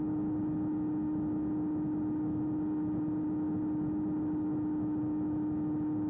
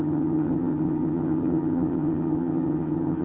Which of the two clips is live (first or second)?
first